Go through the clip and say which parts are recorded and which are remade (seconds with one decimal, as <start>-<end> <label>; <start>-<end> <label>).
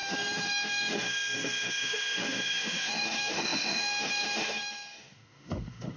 0.0-6.0 remade